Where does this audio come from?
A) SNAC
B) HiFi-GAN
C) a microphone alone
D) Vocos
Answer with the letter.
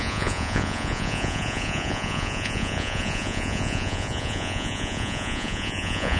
D